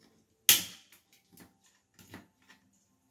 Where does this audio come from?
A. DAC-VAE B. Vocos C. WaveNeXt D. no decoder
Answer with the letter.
D